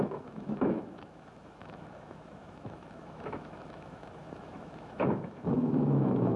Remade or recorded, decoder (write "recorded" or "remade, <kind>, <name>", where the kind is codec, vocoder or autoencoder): remade, autoencoder, DAC-VAE